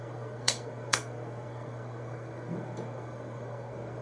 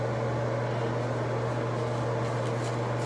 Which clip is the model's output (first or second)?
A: first